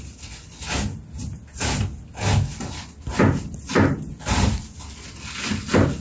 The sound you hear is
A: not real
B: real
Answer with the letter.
B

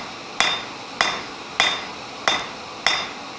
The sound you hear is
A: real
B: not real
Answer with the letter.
A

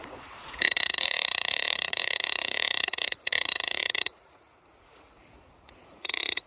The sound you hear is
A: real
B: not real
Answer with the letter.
B